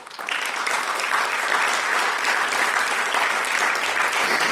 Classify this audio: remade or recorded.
recorded